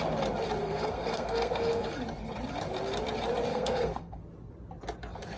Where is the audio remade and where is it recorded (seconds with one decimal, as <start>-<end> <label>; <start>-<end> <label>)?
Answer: 0.0-0.6 recorded; 0.6-1.9 remade; 1.9-3.5 recorded; 3.5-4.2 remade; 4.2-5.4 recorded